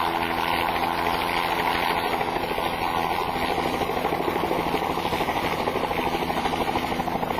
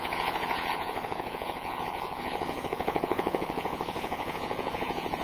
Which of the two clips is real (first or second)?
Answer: first